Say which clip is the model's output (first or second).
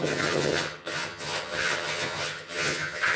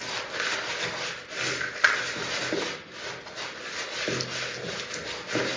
first